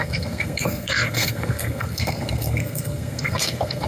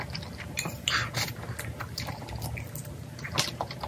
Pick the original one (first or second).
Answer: second